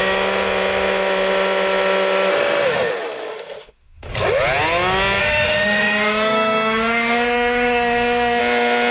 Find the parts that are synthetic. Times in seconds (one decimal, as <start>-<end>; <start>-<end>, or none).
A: 2.3-2.9; 3.3-4.1; 5.2-8.4